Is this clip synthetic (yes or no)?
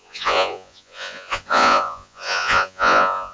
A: yes